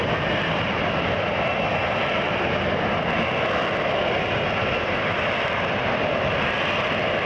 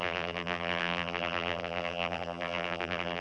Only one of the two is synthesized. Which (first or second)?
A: second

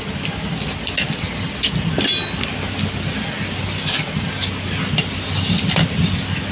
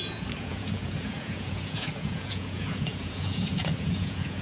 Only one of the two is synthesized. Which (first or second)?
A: second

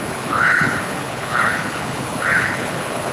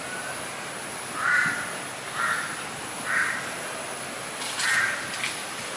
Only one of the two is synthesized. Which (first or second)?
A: first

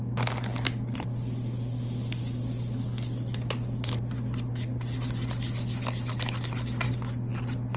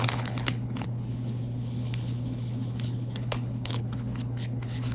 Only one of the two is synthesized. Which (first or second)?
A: second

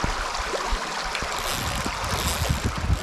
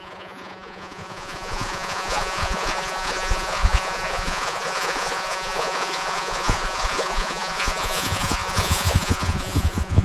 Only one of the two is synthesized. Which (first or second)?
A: second